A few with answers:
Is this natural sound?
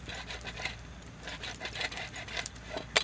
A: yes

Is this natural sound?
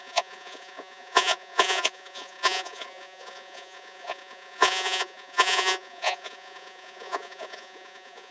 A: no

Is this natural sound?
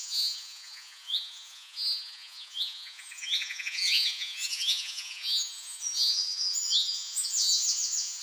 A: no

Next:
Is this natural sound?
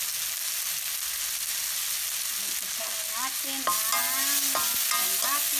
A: yes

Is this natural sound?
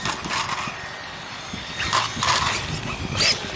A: yes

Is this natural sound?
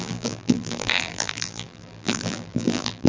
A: no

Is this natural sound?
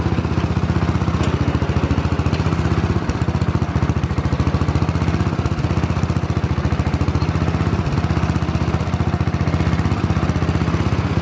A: yes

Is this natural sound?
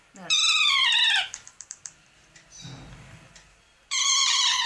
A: no